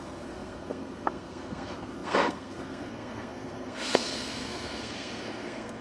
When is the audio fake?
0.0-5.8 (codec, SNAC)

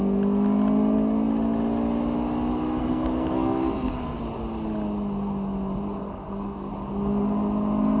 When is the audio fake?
2.8-4.2 (codec, SNAC); 6.0-6.7